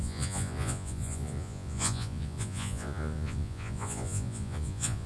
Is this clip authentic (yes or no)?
no